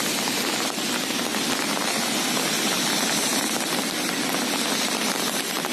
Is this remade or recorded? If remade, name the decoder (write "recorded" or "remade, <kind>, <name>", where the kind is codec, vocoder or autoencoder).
recorded